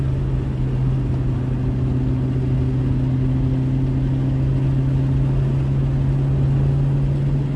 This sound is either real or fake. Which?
real